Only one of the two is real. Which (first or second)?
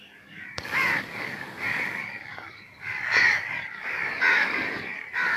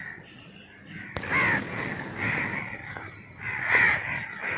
second